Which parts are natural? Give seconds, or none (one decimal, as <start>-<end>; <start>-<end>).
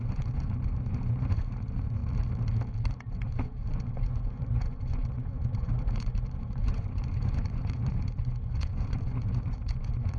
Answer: 2.0-2.9